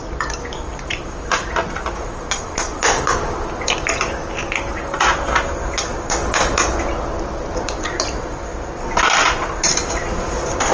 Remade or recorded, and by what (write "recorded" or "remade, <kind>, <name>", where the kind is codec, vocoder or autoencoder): recorded